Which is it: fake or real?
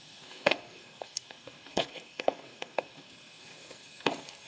fake